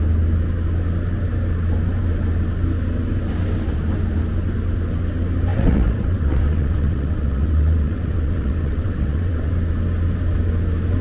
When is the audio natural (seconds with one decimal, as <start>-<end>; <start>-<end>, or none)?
0.0-5.5; 9.5-11.0